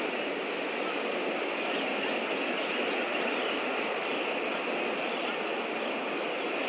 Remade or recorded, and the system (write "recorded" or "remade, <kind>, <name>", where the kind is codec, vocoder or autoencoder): recorded